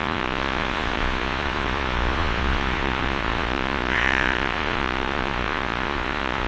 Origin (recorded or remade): remade